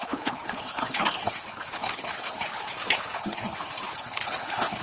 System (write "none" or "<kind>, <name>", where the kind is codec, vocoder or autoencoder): codec, HILCodec